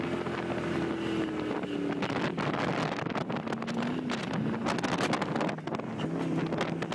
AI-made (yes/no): no